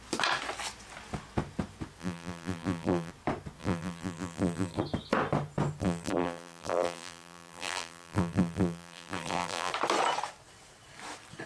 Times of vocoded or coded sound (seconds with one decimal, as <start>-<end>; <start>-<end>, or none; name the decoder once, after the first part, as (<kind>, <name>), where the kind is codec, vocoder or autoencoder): 2.0-3.1 (vocoder, BigVGAN v2); 3.6-4.8; 5.8-9.7